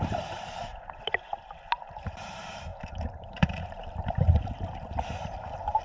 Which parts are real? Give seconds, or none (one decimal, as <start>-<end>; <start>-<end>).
0.7-2.0